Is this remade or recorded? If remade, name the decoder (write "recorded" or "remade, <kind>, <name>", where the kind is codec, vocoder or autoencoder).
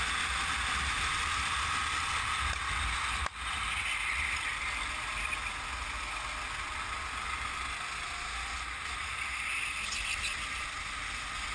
recorded